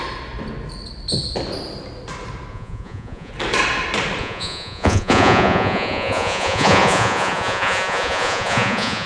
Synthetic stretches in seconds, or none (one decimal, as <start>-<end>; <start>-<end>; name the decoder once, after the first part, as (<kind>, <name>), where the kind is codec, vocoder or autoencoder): 2.5-3.3 (vocoder, Vocos); 4.2-9.1